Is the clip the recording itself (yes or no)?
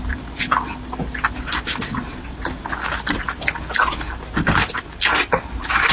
yes